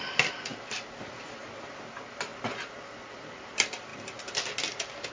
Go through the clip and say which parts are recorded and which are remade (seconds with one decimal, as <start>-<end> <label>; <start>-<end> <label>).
0.0-5.1 recorded